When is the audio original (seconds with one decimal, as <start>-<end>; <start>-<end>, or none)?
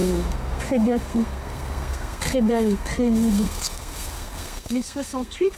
none